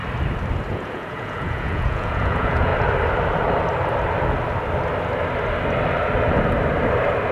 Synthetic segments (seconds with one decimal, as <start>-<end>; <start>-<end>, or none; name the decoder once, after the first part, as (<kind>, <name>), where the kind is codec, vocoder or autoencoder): 0.7-2.7 (vocoder, Vocos)